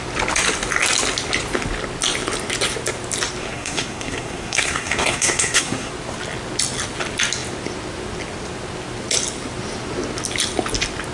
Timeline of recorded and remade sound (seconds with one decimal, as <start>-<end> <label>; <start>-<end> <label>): 0.0-3.4 recorded; 3.4-5.9 remade; 5.9-11.1 recorded